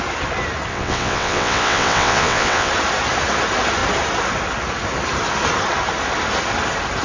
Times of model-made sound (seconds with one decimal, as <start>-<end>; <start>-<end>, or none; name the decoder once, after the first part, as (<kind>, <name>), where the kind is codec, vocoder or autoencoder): 0.7-2.7 (vocoder, WaveNeXt)